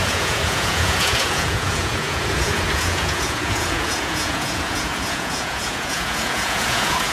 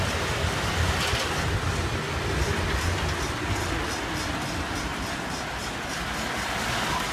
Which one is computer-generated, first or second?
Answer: first